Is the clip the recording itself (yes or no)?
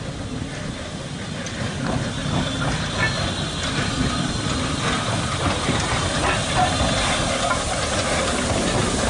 yes